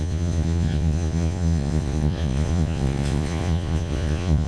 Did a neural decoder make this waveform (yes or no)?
yes